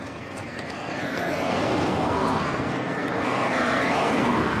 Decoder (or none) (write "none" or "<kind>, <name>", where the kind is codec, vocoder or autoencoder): codec, SNAC